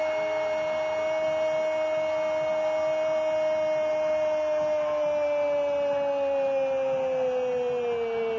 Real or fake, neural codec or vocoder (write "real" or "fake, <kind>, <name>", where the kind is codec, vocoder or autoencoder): real